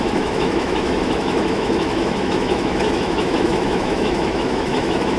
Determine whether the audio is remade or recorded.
remade